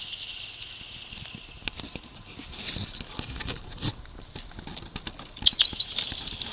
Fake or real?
real